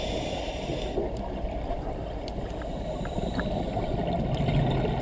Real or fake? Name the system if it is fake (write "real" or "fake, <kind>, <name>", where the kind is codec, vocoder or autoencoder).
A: real